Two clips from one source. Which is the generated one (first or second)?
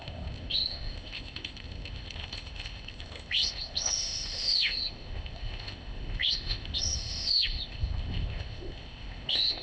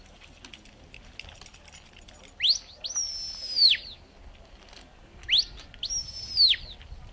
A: first